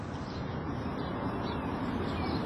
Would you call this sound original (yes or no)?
yes